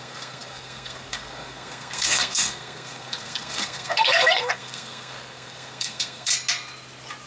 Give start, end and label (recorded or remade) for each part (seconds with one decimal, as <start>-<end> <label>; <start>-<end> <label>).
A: 0.0-6.3 remade; 6.3-7.3 recorded